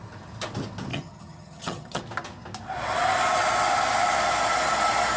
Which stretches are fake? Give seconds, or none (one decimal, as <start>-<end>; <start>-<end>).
0.9-2.0